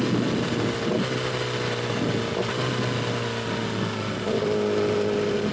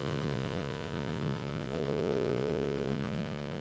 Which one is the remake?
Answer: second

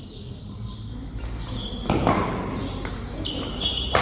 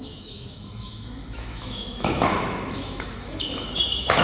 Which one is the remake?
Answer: second